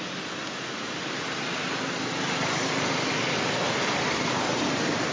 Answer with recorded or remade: recorded